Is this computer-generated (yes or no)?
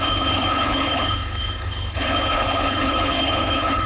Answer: yes